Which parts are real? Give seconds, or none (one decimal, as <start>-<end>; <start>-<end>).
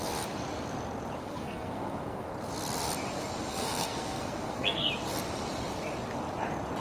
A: 0.0-1.2; 2.3-3.5; 4.9-6.8